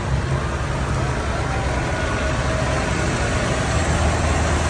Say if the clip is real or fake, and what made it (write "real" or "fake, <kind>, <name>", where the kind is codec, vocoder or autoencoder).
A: real